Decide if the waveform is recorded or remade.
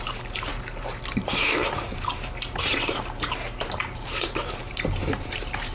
remade